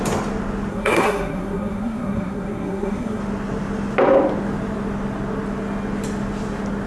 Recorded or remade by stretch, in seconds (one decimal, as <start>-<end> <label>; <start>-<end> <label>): 0.0-0.7 recorded; 0.7-3.2 remade; 3.2-6.9 recorded